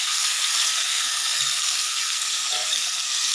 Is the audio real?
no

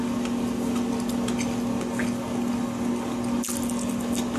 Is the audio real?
yes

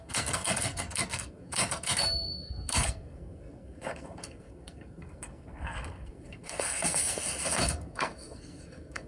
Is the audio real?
no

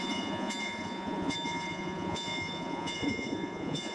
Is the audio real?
no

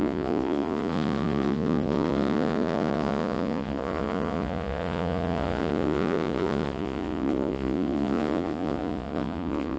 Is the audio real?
no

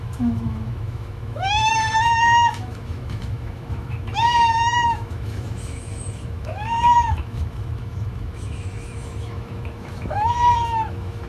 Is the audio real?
no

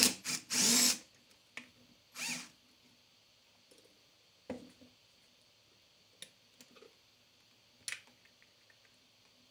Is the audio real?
yes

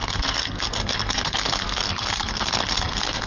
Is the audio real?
no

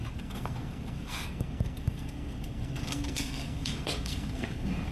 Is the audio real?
no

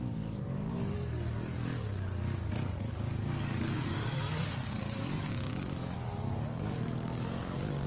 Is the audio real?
no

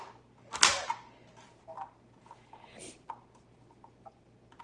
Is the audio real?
yes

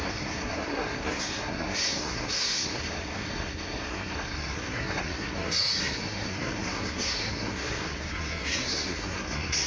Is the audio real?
no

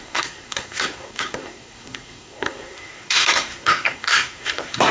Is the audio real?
no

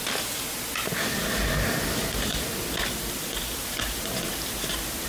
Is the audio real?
yes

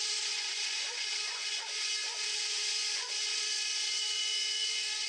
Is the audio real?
no